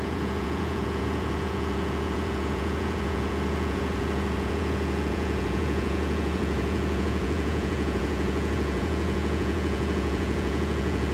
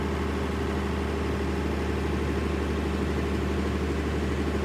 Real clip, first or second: second